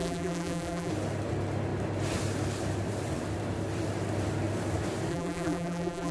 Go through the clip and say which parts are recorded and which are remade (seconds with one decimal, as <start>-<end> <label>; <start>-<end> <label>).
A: 0.0-0.9 remade; 0.9-5.1 recorded; 5.1-6.1 remade